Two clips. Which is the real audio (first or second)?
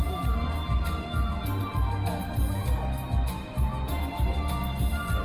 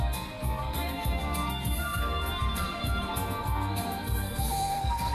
first